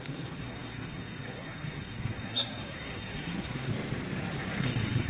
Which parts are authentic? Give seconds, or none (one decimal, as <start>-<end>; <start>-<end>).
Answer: 3.7-4.3